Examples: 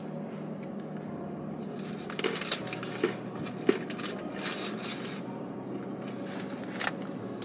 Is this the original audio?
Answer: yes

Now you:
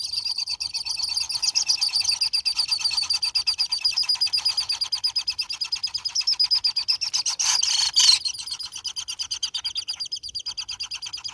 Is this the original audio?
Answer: yes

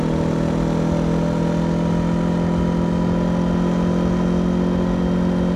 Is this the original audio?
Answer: yes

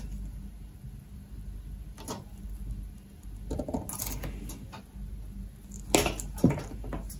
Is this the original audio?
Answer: yes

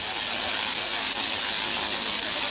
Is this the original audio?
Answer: yes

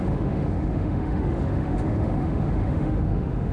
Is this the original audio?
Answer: no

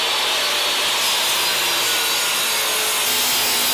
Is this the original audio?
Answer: yes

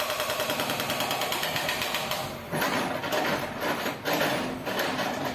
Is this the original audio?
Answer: yes